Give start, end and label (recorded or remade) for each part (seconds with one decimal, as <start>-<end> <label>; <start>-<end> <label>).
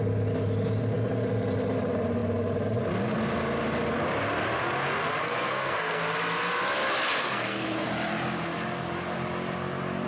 0.0-5.2 recorded; 5.2-6.0 remade; 6.0-7.2 recorded; 7.2-7.9 remade; 7.9-10.1 recorded